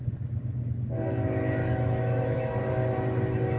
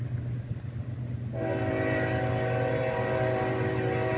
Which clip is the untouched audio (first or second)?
second